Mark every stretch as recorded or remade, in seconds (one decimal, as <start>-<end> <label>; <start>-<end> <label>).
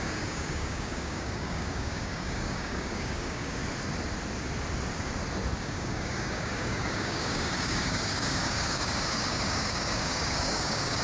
0.0-3.6 remade; 3.6-5.6 recorded; 5.6-11.0 remade